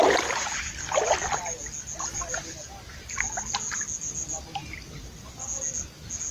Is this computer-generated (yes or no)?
no